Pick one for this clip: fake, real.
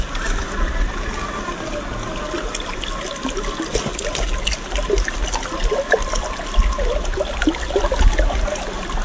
real